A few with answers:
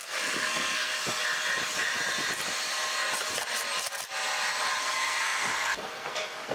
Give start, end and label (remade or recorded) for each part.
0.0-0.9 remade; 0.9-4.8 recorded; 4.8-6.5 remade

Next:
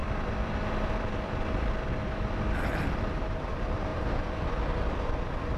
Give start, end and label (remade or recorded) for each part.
0.0-3.9 remade; 3.9-4.7 recorded; 4.7-5.6 remade

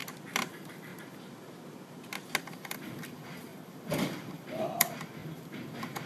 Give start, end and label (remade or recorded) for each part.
0.0-0.5 recorded; 0.5-0.9 remade; 0.9-2.4 recorded; 2.4-6.1 remade

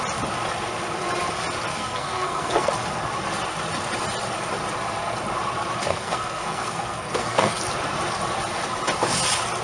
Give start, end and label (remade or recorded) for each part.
0.0-1.7 recorded; 1.7-2.7 remade; 2.7-5.9 recorded; 5.9-7.6 remade; 7.6-9.6 recorded

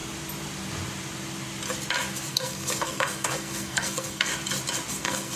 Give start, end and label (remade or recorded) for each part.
0.0-2.3 recorded; 2.3-4.3 remade; 4.3-4.9 recorded; 4.9-5.4 remade

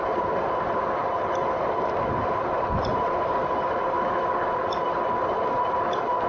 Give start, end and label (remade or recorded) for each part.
0.0-6.3 recorded